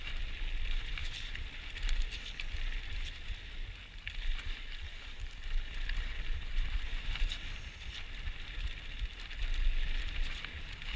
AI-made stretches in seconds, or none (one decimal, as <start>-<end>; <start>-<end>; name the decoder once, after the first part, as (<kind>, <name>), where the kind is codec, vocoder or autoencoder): 0.0-11.0 (vocoder, BigVGAN v2)